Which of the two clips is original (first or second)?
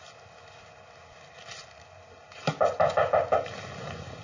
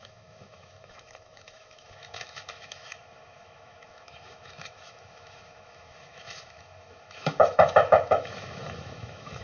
first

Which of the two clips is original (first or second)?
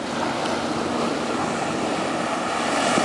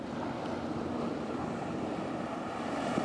first